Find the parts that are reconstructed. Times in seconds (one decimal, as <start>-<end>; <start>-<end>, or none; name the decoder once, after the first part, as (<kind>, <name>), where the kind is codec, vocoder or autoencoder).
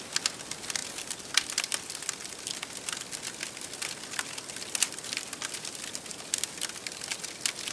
none